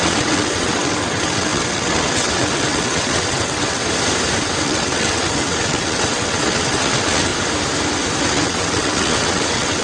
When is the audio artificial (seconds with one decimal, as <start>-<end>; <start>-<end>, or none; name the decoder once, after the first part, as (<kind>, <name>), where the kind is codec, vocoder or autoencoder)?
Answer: 0.0-3.8 (vocoder, WaveNeXt); 4.6-7.3; 8.2-9.8